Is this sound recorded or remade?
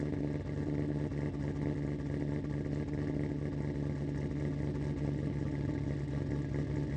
recorded